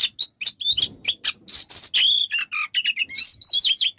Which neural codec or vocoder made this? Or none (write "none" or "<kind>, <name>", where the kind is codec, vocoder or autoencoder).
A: none